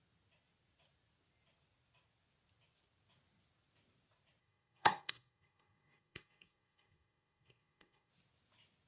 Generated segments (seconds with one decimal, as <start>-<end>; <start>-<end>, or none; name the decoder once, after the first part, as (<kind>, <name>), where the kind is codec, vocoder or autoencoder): 4.4-8.1 (codec, SNAC)